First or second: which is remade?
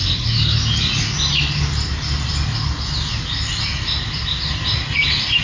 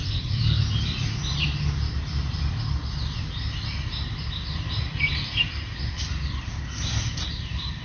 second